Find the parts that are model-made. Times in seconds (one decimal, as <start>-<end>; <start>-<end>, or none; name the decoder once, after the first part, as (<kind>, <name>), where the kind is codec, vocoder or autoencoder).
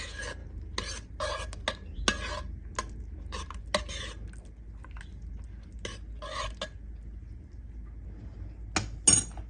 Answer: none